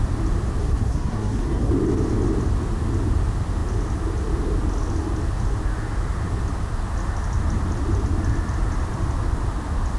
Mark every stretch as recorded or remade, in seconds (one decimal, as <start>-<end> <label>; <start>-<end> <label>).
0.0-0.6 recorded; 0.6-1.7 remade; 1.7-10.0 recorded